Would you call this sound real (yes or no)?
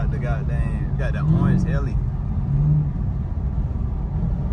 yes